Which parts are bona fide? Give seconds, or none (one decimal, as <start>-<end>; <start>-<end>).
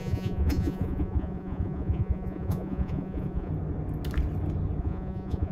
3.5-4.8